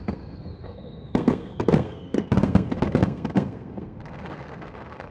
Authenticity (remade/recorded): remade